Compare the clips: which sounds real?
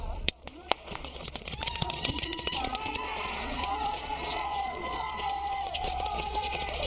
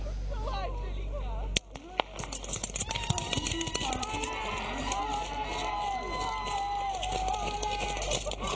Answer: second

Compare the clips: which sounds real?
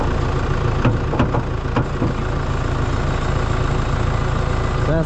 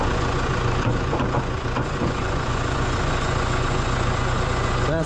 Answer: first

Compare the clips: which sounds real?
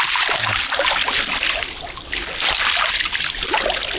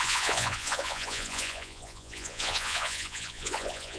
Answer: first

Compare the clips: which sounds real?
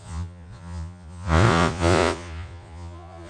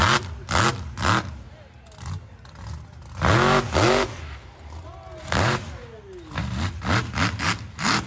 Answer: second